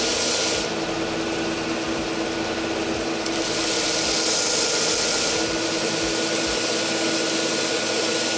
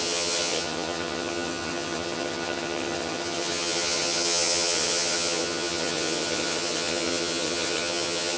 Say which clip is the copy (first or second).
second